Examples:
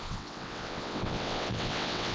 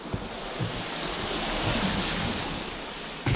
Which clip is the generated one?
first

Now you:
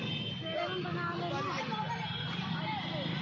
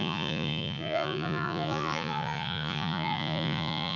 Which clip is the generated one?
second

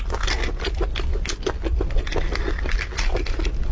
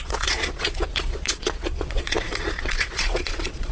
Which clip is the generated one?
second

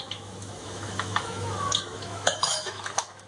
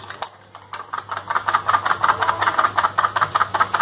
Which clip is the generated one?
first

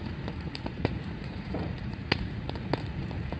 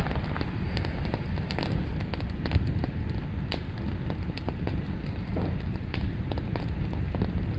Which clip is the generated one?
first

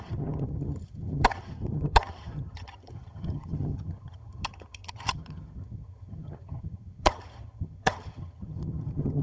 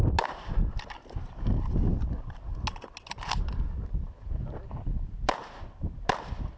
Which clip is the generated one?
first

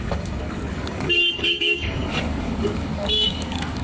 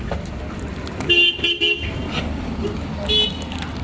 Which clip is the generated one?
first